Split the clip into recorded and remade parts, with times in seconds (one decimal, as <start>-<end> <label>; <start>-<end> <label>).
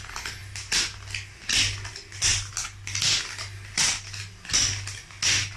0.0-5.6 recorded